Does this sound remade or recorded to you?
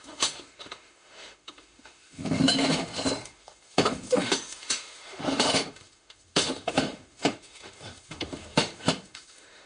remade